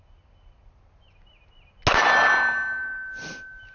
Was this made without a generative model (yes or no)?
yes